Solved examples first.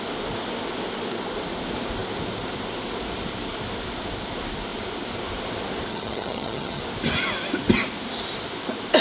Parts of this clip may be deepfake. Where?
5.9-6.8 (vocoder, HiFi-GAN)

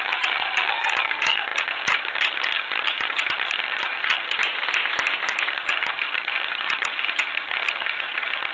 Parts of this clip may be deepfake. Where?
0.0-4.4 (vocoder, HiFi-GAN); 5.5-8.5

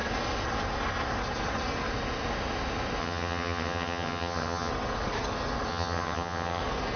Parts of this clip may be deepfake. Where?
3.0-4.7 (vocoder, HiFi-GAN); 5.7-6.6